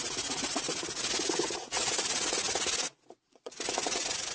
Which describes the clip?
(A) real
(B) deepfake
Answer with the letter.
B